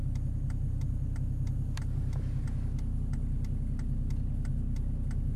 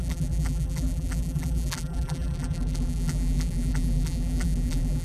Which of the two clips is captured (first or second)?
first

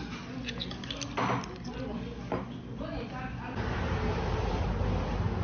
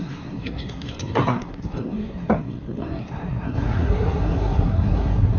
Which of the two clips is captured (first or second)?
first